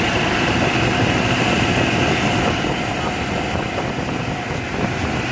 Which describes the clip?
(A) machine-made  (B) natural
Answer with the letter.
B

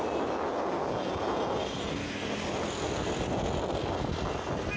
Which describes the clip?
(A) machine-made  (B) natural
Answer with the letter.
B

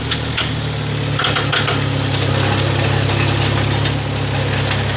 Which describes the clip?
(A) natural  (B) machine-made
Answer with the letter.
A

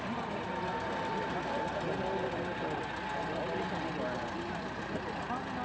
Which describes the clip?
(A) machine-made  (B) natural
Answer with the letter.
B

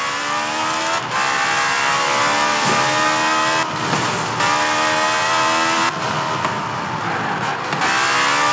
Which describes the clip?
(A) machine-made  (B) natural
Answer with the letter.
B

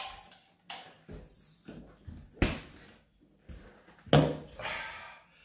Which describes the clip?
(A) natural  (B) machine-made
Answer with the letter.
A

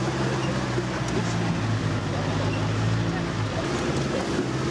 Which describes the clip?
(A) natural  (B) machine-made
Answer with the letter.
A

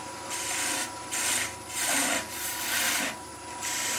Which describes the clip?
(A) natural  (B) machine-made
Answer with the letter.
B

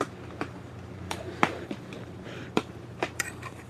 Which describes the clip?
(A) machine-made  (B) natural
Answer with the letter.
A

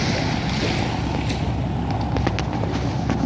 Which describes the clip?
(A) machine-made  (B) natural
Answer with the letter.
B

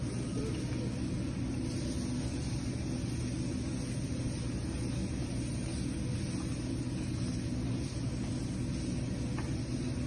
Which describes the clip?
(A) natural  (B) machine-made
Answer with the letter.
A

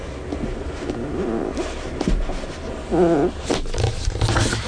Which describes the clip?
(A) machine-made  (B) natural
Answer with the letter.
B